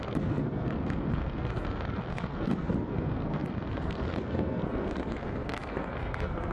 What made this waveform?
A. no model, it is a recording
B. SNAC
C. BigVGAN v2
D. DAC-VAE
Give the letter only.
B